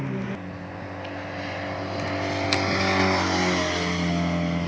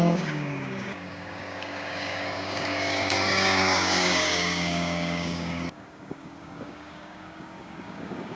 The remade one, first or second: second